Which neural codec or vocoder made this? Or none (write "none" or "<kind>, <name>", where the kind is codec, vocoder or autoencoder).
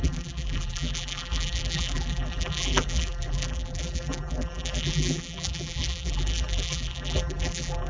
vocoder, BigVGAN v2